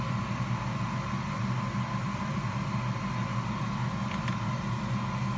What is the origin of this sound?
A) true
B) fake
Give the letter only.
A